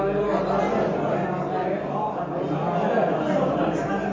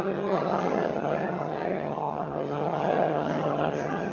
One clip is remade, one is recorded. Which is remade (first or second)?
second